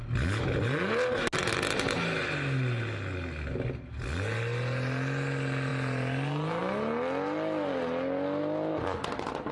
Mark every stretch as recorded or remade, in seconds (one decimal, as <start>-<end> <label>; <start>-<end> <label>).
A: 0.0-9.5 recorded